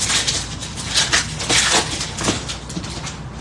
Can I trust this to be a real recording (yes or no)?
yes